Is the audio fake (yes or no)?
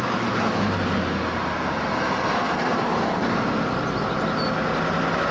no